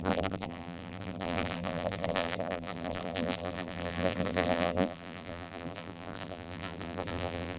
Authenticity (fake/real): fake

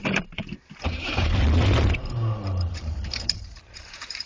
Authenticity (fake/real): fake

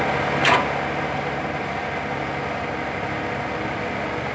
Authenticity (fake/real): real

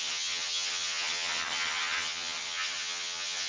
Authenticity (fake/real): fake